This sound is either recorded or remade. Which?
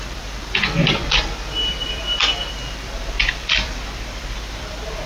remade